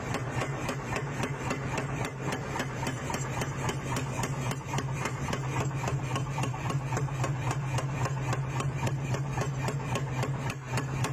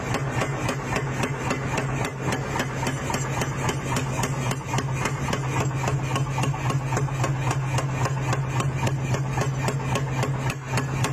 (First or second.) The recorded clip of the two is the second